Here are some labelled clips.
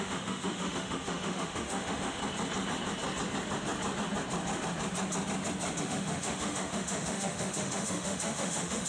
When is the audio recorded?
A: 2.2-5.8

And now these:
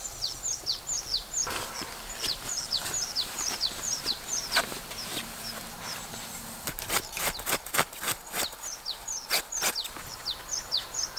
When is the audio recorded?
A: 0.0-2.8; 7.7-11.2